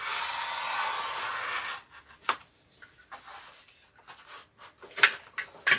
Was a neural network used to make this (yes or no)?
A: no